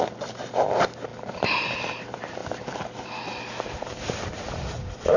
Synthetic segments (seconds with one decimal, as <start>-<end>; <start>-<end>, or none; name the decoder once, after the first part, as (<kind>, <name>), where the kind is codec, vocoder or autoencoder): 0.0-2.4 (vocoder, BigVGAN v2); 4.0-5.2